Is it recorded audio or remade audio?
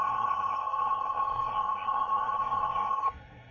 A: remade